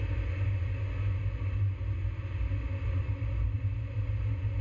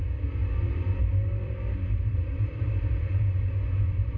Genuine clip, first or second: first